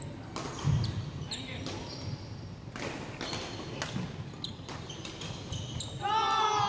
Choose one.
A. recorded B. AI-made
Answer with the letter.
A